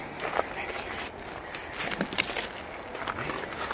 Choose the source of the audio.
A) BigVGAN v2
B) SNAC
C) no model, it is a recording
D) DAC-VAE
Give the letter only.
C